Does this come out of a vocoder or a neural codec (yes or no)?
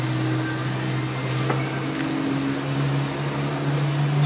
no